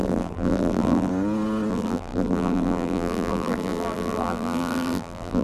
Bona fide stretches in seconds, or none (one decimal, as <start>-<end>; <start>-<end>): 1.1-1.7